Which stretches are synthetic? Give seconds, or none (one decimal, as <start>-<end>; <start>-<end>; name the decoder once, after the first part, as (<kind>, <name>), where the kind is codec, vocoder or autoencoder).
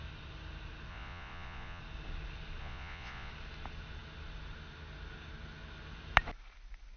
0.9-1.8 (vocoder, Vocos); 2.6-3.3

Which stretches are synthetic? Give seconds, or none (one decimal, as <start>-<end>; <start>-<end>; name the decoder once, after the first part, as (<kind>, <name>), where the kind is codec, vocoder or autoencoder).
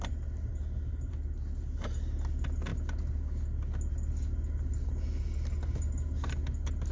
none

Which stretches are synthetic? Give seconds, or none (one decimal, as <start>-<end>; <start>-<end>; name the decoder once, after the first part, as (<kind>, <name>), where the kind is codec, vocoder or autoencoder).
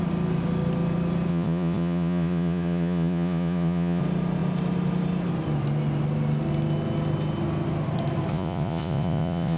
1.3-4.0 (vocoder, Vocos); 8.3-9.6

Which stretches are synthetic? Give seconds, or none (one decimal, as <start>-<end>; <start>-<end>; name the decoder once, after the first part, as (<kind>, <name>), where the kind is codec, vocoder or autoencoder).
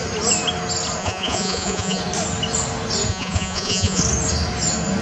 1.0-2.0 (vocoder, Vocos); 3.1-4.0